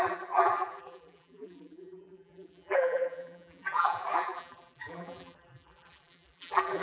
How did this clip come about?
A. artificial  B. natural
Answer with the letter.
A